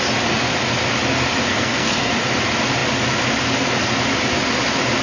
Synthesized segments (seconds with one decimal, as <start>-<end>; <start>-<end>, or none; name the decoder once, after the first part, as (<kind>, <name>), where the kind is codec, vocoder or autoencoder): 1.5-2.1 (codec, SNAC)